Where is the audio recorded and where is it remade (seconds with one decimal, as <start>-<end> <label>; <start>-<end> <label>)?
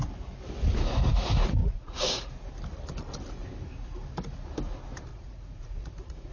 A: 0.0-1.6 recorded; 1.6-2.3 remade; 2.3-5.1 recorded; 5.1-6.3 remade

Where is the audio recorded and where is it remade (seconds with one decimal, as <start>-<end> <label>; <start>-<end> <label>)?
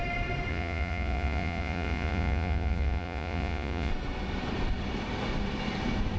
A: 0.0-0.5 recorded; 0.5-3.9 remade; 3.9-6.2 recorded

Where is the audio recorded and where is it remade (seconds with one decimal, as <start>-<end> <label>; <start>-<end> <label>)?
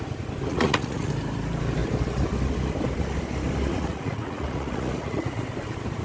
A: 0.0-0.5 recorded; 0.5-1.1 remade; 1.1-3.7 recorded; 3.7-5.4 remade; 5.4-6.0 recorded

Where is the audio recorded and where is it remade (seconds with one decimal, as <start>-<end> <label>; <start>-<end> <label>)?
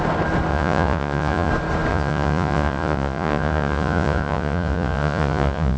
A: 0.0-0.5 recorded; 0.5-1.5 remade; 1.5-1.9 recorded; 1.9-5.8 remade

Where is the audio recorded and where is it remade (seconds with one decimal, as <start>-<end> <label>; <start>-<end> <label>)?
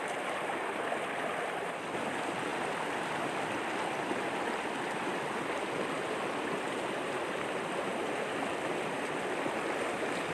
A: 0.0-10.3 recorded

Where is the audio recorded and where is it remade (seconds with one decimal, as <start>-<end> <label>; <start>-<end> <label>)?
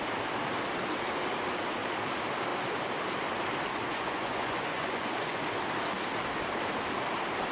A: 0.0-3.7 recorded; 3.7-5.4 remade; 5.4-7.5 recorded